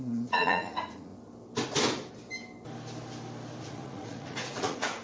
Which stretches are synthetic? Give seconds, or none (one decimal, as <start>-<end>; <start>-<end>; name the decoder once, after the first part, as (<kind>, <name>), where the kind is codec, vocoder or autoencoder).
0.0-1.1 (vocoder, Vocos); 3.6-5.0